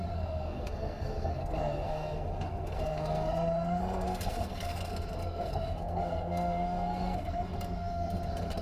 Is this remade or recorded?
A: remade